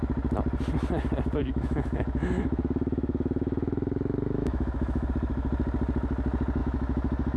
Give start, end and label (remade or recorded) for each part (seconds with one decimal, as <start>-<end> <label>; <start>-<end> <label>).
0.0-1.4 recorded; 1.4-5.1 remade; 5.1-6.6 recorded; 6.6-7.4 remade